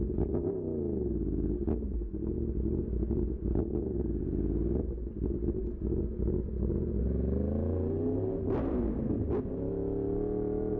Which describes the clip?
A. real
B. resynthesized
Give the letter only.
A